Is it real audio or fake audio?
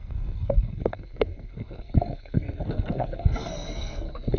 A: fake